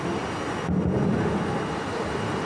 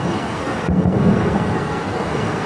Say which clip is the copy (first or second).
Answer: second